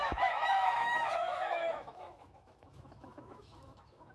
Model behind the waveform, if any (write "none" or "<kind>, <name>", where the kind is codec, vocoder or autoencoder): autoencoder, DAC-VAE